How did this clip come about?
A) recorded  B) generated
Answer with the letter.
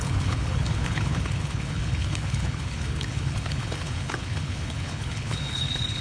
B